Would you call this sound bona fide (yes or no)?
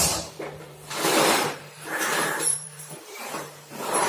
no